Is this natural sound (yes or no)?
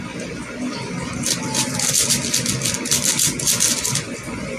yes